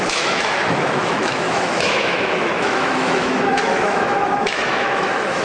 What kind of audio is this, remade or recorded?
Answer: remade